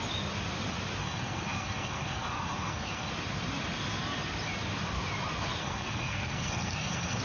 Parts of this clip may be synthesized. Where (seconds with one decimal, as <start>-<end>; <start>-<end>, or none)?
1.0-3.1; 5.6-7.2